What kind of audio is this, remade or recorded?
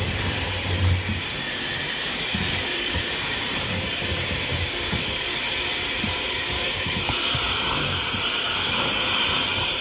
remade